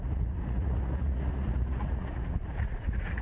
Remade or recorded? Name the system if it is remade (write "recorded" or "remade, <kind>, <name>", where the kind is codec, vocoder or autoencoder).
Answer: remade, vocoder, Vocos